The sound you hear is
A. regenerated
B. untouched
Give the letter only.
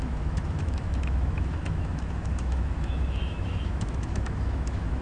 A